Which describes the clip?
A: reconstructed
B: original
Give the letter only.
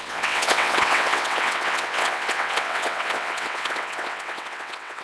A